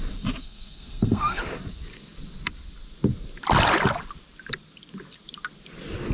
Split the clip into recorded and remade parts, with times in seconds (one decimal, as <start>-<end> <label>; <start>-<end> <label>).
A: 0.0-0.4 recorded; 0.4-1.4 remade; 1.4-6.1 recorded